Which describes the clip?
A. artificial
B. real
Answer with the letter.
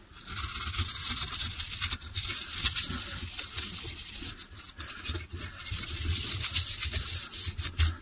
B